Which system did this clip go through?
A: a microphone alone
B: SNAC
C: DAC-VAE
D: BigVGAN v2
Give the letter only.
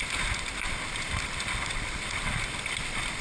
A